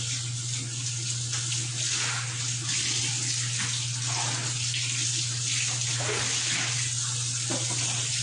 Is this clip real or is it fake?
real